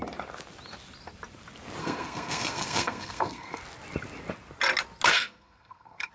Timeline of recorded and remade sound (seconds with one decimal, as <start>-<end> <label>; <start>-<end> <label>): 0.0-1.8 recorded; 1.8-3.6 remade; 3.6-5.1 recorded; 5.1-6.1 remade